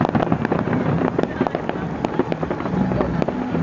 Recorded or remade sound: recorded